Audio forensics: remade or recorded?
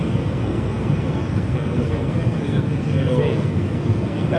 remade